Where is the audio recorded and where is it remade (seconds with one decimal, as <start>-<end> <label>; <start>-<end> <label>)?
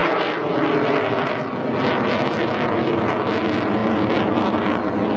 0.0-5.2 recorded